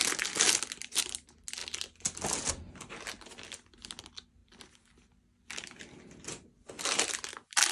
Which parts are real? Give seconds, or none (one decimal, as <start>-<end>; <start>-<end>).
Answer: 0.0-7.7